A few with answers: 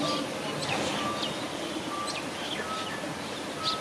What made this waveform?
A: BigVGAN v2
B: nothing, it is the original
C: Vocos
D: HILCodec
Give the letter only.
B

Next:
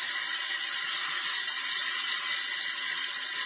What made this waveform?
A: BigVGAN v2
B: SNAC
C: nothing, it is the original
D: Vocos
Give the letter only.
C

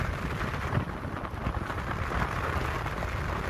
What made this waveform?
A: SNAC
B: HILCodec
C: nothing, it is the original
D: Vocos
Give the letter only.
C